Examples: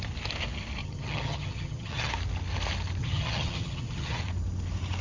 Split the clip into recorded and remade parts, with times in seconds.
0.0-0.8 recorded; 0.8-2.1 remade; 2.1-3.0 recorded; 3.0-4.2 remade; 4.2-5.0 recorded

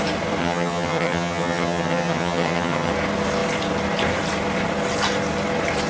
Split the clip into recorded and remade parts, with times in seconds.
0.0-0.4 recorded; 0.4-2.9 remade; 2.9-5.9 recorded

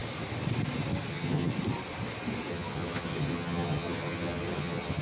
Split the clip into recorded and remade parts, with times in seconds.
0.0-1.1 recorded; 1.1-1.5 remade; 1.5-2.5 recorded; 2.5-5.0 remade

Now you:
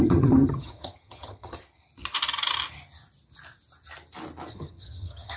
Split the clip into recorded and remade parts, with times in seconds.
0.0-1.6 remade; 1.6-4.5 recorded; 4.5-5.4 remade

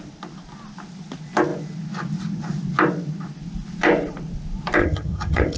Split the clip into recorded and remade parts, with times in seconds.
0.0-4.8 recorded; 4.8-5.6 remade